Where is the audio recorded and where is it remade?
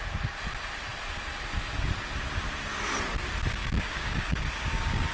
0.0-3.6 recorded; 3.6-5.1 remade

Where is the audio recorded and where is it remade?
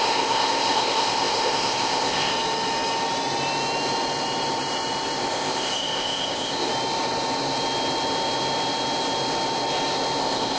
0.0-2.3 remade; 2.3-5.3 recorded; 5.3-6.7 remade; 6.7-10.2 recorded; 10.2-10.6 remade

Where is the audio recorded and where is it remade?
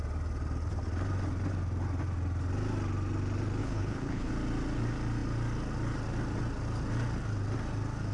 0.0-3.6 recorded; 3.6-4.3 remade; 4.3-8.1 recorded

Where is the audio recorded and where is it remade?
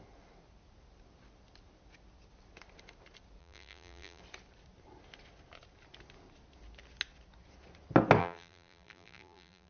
0.0-3.4 recorded; 3.4-4.2 remade; 4.2-8.2 recorded; 8.2-9.7 remade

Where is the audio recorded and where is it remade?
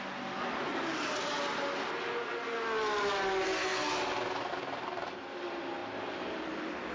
0.0-0.7 recorded; 0.7-1.3 remade; 1.3-5.8 recorded; 5.8-6.9 remade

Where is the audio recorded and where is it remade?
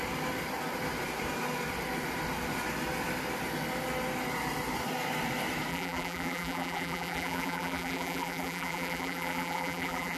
0.0-5.7 recorded; 5.7-10.2 remade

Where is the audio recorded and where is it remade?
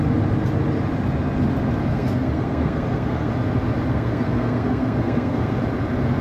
0.0-1.9 recorded; 1.9-3.3 remade; 3.3-3.9 recorded; 3.9-5.6 remade; 5.6-6.2 recorded